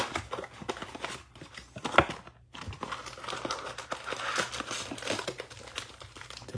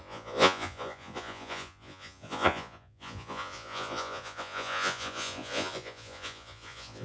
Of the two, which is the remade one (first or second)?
second